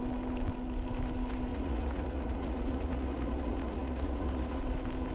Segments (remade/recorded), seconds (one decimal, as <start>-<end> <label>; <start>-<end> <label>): 0.0-1.5 recorded; 1.5-4.6 remade; 4.6-5.1 recorded